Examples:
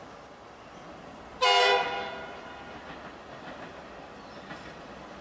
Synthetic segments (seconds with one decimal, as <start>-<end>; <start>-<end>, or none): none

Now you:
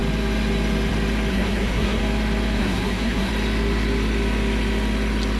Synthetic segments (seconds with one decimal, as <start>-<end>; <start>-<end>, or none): 1.3-2.0; 2.6-3.3

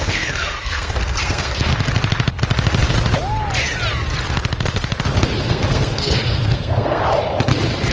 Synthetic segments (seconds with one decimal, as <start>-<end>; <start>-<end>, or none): 0.0-1.7; 5.4-7.0